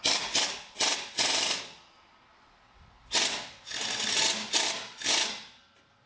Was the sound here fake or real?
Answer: real